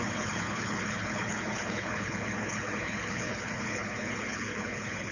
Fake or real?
fake